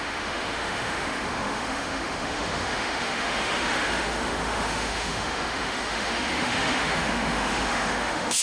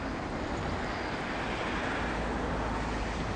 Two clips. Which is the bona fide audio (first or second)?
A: second